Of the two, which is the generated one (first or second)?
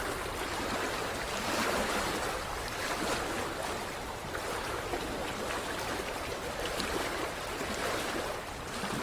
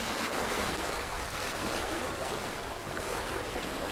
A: second